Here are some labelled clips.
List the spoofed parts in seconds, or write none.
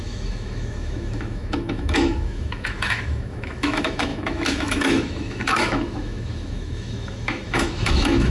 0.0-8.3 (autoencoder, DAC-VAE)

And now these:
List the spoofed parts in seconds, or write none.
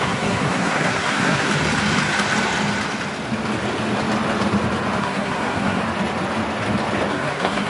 0.0-1.5 (codec, SNAC); 5.0-5.8; 7.1-7.7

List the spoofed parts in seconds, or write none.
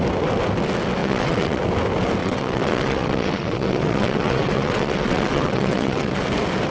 1.0-1.6 (vocoder, WaveNeXt); 2.2-6.2